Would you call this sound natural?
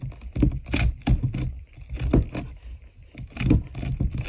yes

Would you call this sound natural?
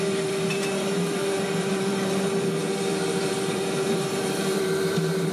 no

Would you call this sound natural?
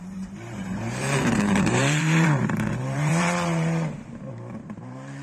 no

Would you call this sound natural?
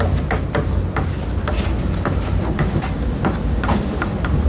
yes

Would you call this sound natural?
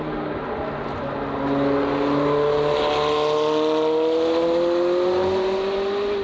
yes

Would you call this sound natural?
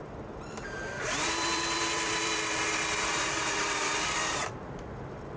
no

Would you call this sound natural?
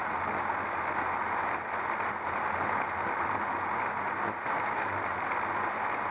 yes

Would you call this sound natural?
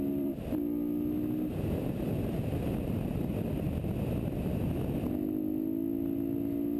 yes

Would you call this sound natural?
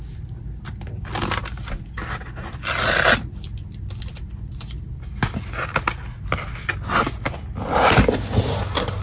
yes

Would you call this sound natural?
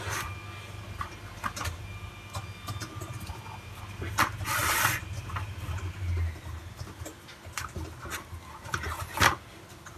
yes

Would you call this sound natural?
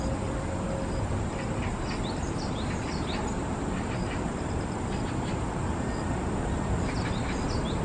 yes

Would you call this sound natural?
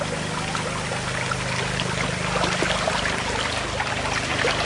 yes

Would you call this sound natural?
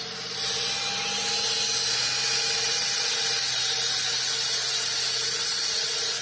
yes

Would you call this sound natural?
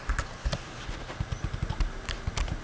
yes